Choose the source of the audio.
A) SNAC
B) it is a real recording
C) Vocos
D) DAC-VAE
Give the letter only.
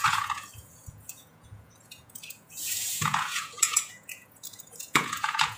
C